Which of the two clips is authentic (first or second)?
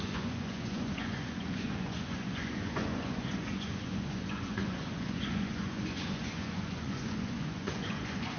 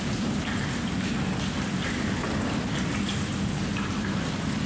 second